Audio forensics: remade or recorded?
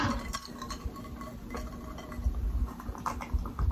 recorded